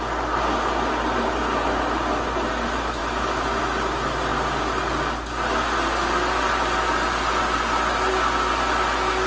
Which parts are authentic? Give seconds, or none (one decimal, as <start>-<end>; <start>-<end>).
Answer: 0.0-9.3